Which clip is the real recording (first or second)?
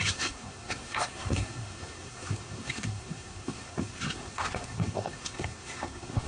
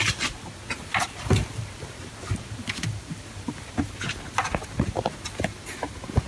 second